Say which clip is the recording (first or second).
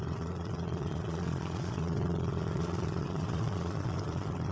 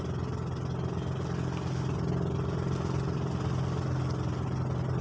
second